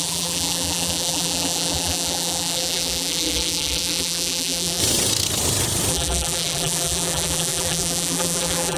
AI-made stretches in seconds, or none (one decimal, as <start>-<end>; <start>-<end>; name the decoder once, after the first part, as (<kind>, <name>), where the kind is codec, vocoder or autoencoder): 0.0-4.8 (vocoder, BigVGAN v2); 5.9-8.8